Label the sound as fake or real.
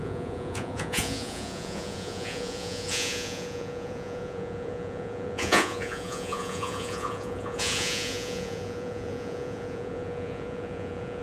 fake